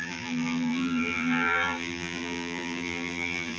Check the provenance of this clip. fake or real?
fake